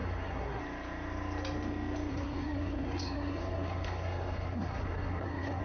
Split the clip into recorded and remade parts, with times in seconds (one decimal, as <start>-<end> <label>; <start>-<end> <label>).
0.0-0.6 remade; 0.6-2.1 recorded; 2.1-5.6 remade